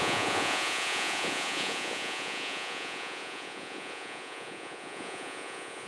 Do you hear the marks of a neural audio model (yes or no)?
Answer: yes